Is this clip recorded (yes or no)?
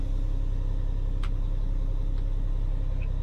yes